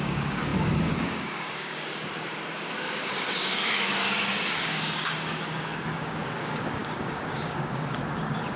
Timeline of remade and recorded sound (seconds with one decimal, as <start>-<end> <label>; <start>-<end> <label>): 0.0-8.6 remade